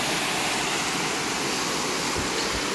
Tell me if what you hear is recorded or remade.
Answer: recorded